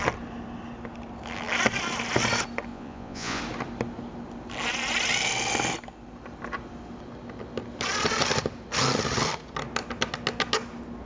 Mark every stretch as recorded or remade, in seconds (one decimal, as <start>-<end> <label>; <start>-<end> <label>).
0.0-2.7 recorded; 2.7-3.4 remade; 3.4-11.1 recorded